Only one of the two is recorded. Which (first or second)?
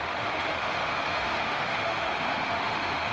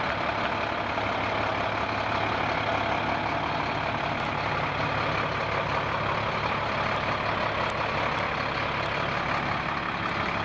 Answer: second